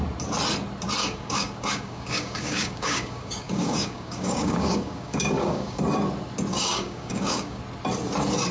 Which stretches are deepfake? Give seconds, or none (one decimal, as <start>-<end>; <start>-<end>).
1.0-5.8; 6.5-7.6